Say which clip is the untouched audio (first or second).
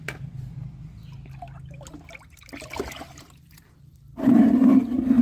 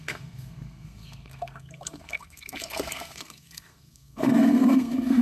first